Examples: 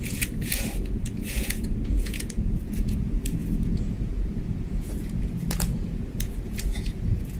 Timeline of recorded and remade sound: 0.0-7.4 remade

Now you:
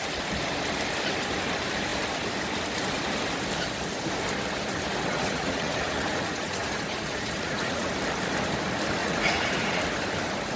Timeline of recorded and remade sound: 0.0-5.1 recorded; 5.1-7.9 remade; 7.9-9.0 recorded; 9.0-9.8 remade; 9.8-10.6 recorded

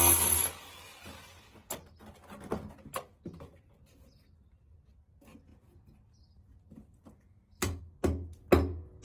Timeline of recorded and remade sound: 0.0-5.5 recorded; 5.5-7.8 remade; 7.8-9.0 recorded

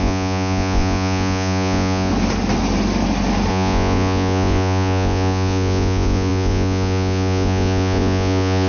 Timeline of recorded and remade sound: 0.0-2.1 remade; 2.1-3.5 recorded; 3.5-8.7 remade